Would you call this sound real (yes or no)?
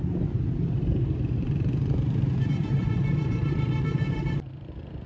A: no